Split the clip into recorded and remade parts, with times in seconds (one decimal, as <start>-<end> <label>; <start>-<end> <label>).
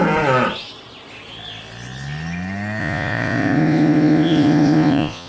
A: 0.0-2.8 recorded; 2.8-5.3 remade